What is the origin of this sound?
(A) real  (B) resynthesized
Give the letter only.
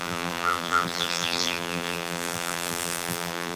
B